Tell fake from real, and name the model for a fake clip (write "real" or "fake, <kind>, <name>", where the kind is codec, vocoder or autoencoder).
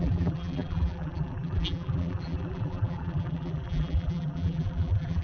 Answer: fake, vocoder, BigVGAN v2